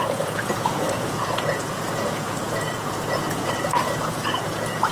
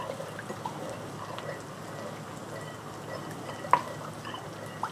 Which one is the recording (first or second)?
second